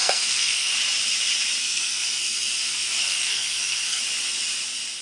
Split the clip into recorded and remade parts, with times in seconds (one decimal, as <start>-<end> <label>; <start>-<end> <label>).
0.0-0.7 remade; 0.7-1.6 recorded; 1.6-4.0 remade; 4.0-5.0 recorded